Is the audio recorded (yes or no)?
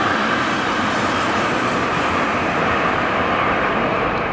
yes